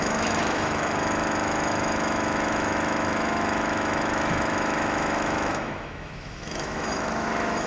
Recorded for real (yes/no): no